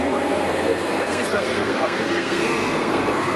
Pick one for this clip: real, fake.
fake